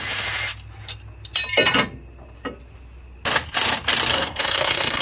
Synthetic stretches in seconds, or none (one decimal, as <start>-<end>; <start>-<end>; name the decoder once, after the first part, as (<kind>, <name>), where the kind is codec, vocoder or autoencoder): 4.1-5.0 (codec, SNAC)